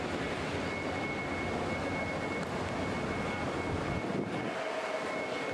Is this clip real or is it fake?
real